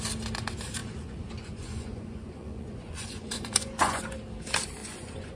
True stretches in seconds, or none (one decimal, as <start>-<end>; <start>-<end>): 0.0-0.8; 4.0-4.8